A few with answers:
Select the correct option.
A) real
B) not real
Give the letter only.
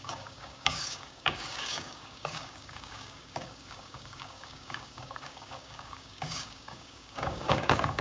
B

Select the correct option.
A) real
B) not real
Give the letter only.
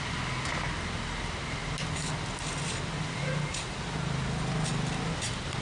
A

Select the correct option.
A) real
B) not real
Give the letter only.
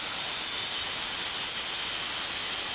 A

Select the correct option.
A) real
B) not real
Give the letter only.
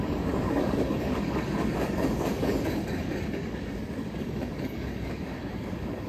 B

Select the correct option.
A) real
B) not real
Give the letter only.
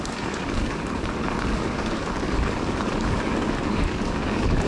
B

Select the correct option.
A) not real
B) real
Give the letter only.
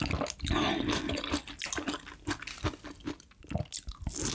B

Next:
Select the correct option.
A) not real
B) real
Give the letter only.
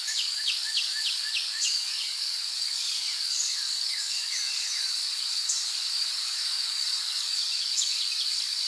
A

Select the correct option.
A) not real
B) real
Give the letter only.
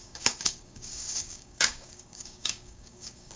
A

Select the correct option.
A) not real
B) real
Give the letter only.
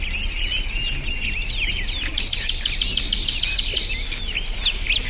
B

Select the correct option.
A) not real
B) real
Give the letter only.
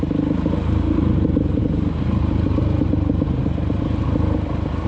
B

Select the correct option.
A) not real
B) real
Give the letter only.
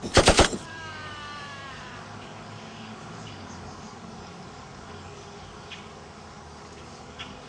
A